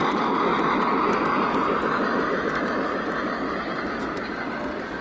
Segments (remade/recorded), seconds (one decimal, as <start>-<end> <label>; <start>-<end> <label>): 0.0-0.5 remade; 0.5-3.5 recorded; 3.5-5.0 remade